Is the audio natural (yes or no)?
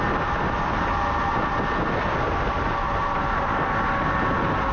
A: yes